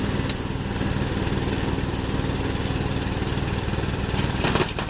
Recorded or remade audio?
recorded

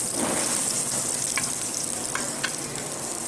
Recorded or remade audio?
recorded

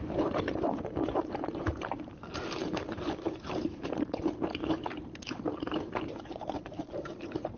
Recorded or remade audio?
remade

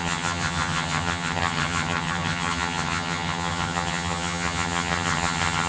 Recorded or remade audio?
remade